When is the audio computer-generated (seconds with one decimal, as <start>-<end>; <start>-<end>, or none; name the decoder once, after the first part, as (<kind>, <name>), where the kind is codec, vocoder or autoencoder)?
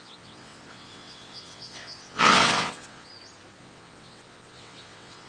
0.0-3.1 (vocoder, WaveNeXt); 3.6-5.3